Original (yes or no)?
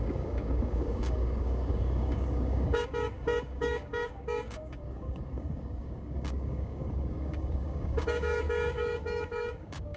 no